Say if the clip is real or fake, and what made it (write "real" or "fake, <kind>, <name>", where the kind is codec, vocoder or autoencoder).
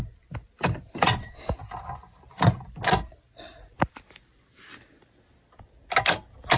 fake, vocoder, BigVGAN v2